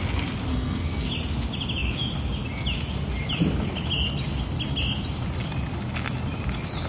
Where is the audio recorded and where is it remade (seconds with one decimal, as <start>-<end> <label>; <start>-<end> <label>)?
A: 0.0-0.5 recorded; 0.5-1.1 remade; 1.1-6.9 recorded